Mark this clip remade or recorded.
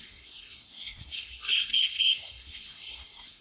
remade